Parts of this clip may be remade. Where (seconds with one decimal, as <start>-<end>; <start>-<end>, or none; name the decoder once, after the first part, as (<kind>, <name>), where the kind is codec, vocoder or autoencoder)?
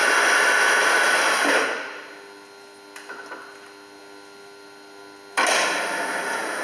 none